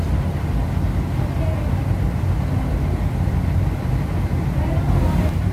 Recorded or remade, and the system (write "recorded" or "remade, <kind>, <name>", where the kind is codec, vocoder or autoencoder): recorded